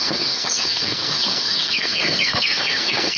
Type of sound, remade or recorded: remade